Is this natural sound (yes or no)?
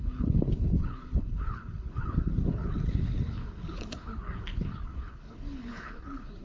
no